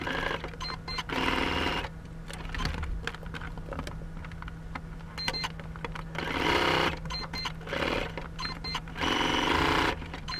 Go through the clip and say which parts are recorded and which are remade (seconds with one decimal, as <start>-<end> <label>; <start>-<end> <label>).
0.0-10.4 recorded